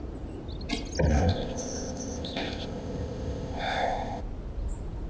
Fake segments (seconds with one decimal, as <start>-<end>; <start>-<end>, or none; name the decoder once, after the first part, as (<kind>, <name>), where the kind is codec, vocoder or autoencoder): 1.1-4.2 (codec, ZipCodec)